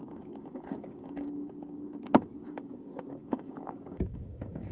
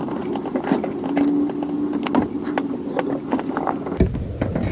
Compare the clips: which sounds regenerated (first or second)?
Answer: first